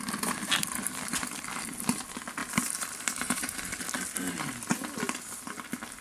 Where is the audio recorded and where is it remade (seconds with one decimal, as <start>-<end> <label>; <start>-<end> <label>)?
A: 0.0-2.4 recorded; 2.4-3.8 remade; 3.8-6.0 recorded